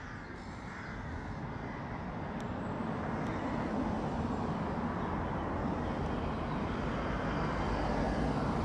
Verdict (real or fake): real